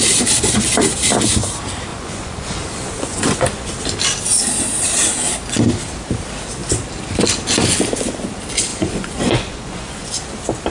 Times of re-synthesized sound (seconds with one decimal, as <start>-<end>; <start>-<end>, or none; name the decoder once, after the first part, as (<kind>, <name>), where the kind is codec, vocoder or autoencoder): 1.9-3.7 (vocoder, Vocos); 8.7-10.1